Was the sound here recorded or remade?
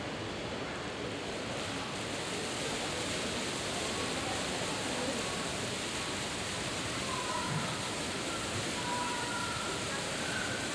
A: recorded